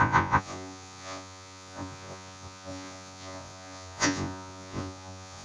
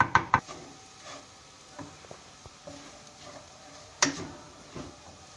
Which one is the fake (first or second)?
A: first